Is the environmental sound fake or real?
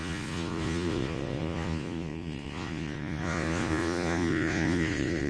fake